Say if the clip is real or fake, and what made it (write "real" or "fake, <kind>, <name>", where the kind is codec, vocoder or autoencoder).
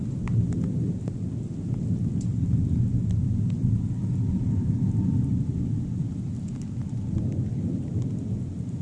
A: real